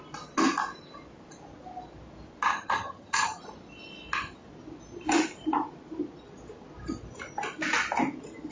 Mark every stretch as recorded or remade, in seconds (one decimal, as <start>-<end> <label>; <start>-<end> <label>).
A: 0.0-2.5 recorded; 2.5-3.4 remade; 3.4-8.5 recorded